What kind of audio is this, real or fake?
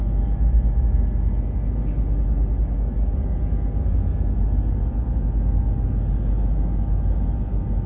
real